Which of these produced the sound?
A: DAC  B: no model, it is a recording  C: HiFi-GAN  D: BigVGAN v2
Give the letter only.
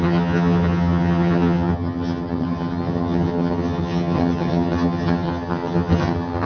C